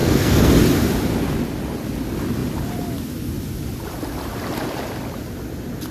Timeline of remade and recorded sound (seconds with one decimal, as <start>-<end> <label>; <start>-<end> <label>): 0.0-0.5 remade; 0.5-5.9 recorded